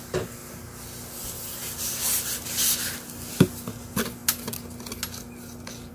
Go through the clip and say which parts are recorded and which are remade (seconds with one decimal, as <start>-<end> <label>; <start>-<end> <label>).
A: 0.0-5.9 recorded

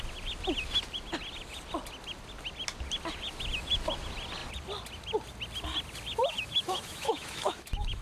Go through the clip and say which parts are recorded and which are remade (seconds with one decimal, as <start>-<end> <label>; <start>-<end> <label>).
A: 0.0-6.3 recorded; 6.3-8.0 remade